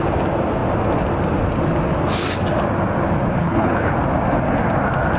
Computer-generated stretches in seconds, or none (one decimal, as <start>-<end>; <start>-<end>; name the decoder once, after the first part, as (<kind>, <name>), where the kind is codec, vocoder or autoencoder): 3.4-3.9 (codec, HILCodec)

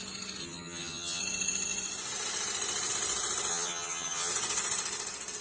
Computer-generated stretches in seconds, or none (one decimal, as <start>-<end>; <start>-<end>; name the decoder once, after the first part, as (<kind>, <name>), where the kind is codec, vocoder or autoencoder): 0.4-1.2 (vocoder, HiFi-GAN); 3.5-4.3